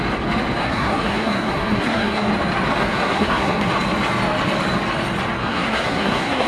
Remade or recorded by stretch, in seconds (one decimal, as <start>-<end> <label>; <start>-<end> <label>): 0.0-0.6 recorded; 0.6-2.3 remade; 2.3-2.8 recorded; 2.8-3.7 remade; 3.7-5.4 recorded; 5.4-6.5 remade